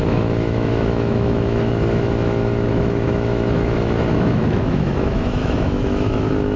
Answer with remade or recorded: remade